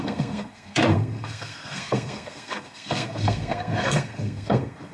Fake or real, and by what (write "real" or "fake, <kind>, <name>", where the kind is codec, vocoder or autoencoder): fake, codec, SNAC